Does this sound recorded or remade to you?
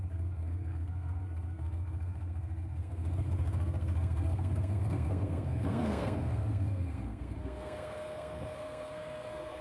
remade